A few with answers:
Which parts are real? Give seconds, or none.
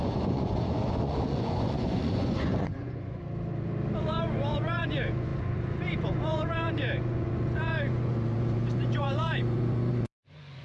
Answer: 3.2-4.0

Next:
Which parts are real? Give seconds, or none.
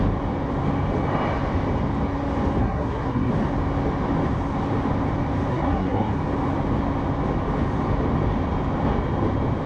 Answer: 0.0-2.6; 3.3-5.5; 6.2-9.7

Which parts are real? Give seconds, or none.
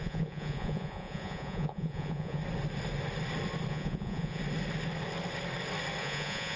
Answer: 2.4-3.7; 4.4-6.0